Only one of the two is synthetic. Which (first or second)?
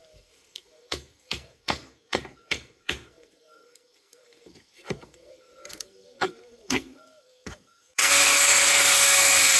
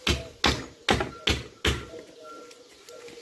first